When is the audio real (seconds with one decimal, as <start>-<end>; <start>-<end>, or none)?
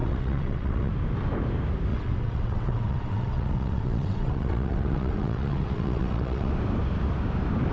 0.9-1.9; 6.5-7.7